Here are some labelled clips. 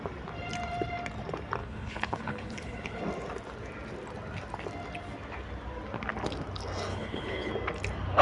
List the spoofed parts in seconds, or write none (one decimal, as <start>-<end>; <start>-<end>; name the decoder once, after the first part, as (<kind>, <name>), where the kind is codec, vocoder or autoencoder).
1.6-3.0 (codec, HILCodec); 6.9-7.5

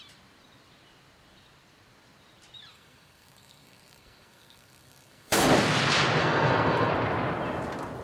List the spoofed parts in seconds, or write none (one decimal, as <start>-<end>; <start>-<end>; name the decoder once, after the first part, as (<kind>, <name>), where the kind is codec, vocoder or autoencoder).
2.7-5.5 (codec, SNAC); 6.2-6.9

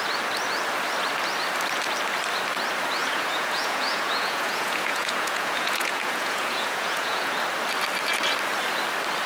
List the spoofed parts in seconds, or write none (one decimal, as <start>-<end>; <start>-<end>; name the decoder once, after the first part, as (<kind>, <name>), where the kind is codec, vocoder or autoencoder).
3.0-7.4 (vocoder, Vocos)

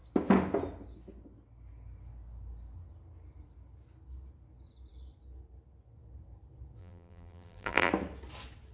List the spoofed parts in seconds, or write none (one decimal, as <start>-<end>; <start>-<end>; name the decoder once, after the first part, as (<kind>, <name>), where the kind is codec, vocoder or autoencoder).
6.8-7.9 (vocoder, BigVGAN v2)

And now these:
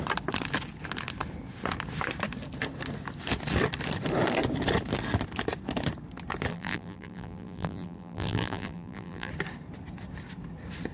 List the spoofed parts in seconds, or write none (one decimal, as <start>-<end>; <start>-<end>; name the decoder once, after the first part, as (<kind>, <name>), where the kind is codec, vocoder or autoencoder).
6.5-9.3 (vocoder, BigVGAN v2)